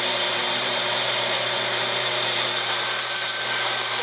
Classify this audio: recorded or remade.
remade